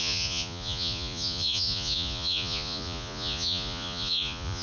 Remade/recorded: remade